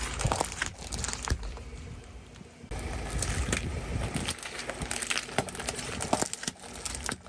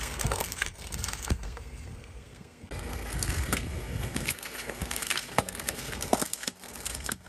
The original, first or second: first